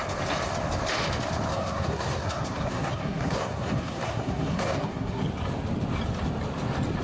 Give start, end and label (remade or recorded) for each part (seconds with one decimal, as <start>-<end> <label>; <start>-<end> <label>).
0.0-1.5 recorded; 1.5-5.2 remade; 5.2-7.0 recorded